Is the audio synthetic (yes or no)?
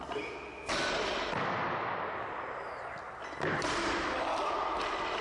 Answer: no